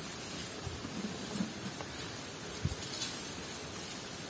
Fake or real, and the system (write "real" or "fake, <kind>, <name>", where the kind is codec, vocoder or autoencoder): real